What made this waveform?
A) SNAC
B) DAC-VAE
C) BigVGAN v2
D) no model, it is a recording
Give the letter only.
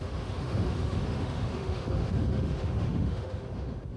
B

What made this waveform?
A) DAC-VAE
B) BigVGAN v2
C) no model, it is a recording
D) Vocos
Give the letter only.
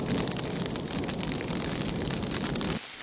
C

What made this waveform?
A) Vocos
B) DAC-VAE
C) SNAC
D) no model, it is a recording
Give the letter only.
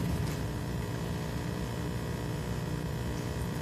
D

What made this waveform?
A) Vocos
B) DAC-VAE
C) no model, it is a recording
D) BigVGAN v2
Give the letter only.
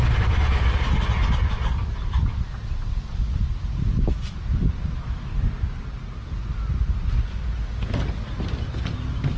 C